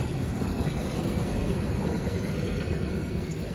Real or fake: fake